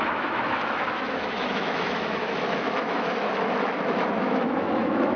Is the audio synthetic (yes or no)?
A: yes